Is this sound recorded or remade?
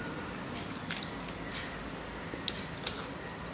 recorded